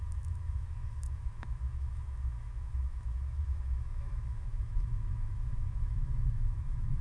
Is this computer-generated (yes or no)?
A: yes